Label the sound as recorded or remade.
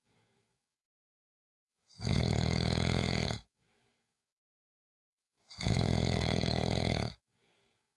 remade